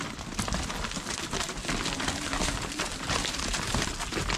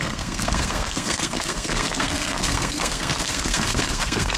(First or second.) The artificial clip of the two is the second